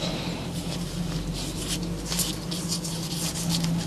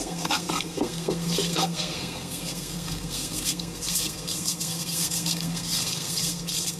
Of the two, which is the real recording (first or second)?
first